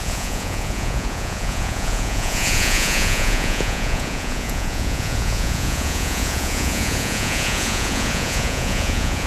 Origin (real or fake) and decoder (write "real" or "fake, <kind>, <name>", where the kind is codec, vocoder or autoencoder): fake, vocoder, Vocos